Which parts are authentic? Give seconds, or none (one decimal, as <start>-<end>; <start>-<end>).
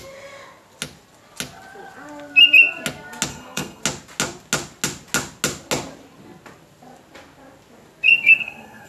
0.0-3.3; 3.8-8.1